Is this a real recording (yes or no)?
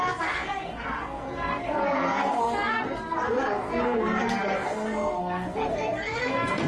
no